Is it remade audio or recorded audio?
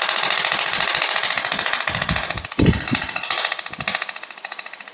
recorded